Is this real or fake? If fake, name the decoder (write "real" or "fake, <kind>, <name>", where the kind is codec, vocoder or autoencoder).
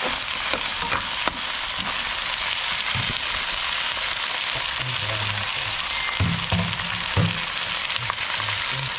real